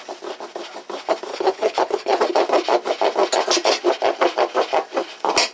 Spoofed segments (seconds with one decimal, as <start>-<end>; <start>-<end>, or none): 1.3-2.2